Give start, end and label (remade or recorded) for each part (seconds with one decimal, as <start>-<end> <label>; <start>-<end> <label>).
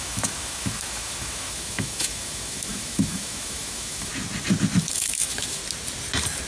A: 0.0-4.1 remade; 4.1-4.8 recorded; 4.8-5.6 remade; 5.6-6.5 recorded